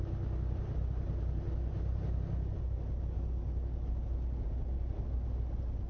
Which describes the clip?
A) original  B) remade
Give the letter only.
A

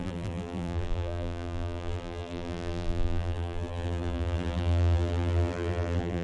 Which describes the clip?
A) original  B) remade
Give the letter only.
B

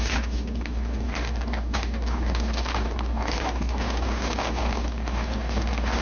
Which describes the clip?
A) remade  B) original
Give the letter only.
A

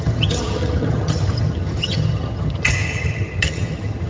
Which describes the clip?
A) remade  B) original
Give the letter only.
A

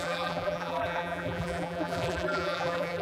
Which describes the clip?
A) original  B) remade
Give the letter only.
B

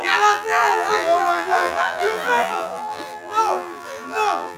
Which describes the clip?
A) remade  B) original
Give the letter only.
A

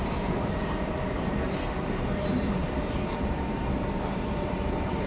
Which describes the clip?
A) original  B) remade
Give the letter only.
B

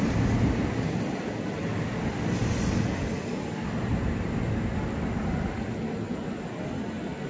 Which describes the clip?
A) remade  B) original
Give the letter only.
B